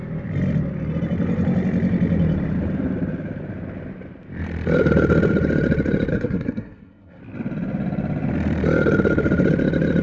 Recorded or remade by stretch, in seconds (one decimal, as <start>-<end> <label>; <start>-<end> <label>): 0.0-6.1 recorded; 6.1-7.2 remade; 7.2-10.0 recorded